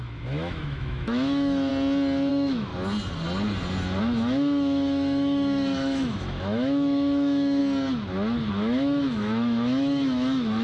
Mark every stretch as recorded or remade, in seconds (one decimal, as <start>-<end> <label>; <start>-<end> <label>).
0.0-1.7 remade; 1.7-2.3 recorded; 2.3-2.7 remade; 2.7-4.0 recorded; 4.0-7.6 remade; 7.6-8.5 recorded; 8.5-10.6 remade